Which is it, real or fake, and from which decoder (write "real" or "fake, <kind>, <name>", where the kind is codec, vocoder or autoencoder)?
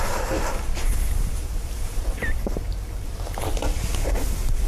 fake, vocoder, BigVGAN v2